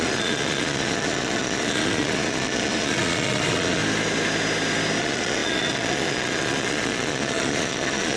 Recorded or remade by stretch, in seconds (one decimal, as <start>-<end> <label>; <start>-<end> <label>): 0.0-3.8 remade; 3.8-5.0 recorded; 5.0-8.2 remade